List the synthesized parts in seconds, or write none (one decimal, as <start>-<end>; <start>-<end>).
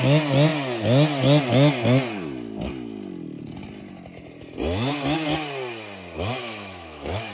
6.4-7.3